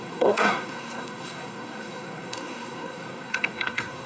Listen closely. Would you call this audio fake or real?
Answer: fake